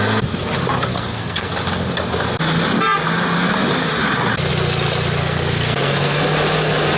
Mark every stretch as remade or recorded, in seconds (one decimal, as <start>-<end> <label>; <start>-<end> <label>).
0.0-0.9 recorded; 0.9-1.5 remade; 1.5-5.2 recorded; 5.2-6.2 remade; 6.2-7.0 recorded